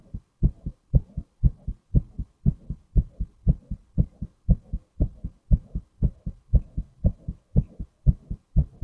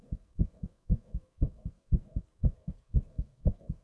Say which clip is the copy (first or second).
second